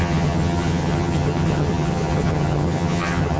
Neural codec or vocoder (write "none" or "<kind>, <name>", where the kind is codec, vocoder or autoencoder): vocoder, HiFi-GAN